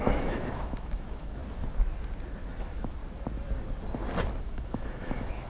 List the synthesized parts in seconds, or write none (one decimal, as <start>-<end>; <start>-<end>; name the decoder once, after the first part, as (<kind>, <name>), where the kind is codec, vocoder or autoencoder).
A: 0.0-1.4 (autoencoder, DAC-VAE); 2.6-3.0; 4.4-5.5